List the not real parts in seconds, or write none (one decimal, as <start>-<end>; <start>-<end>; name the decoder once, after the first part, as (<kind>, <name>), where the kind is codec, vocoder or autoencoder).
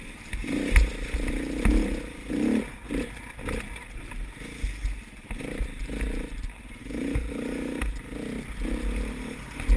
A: 6.8-7.3 (vocoder, Vocos)